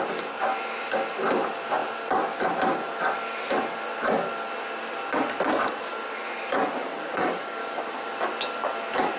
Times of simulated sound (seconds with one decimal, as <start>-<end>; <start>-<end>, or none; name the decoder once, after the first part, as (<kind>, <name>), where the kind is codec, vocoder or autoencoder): 6.8-8.0 (codec, DAC)